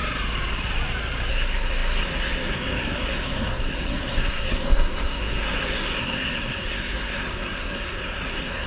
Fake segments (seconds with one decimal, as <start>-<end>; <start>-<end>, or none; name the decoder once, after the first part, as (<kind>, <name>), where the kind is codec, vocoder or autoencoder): 1.3-8.7 (codec, SNAC)